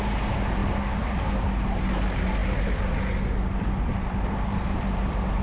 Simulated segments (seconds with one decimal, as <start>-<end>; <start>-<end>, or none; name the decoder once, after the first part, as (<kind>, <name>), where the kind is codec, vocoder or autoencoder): 0.6-1.2 (vocoder, BigVGAN v2); 2.4-5.4